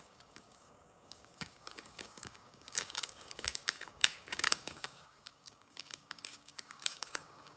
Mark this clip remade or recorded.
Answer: remade